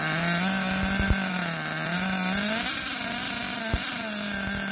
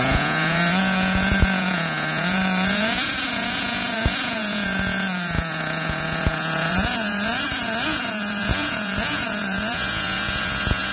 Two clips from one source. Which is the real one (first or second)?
first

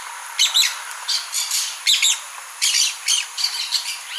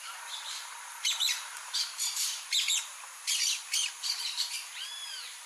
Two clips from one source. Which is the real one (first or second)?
first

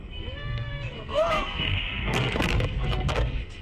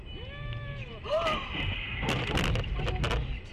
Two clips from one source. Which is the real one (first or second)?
second